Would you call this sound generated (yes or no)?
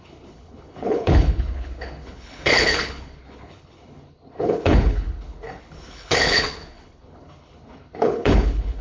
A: yes